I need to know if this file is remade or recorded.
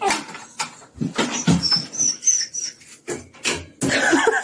recorded